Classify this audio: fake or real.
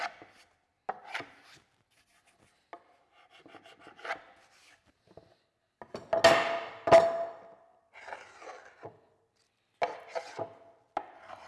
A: real